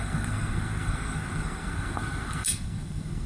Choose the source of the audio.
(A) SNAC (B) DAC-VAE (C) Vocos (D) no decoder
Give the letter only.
A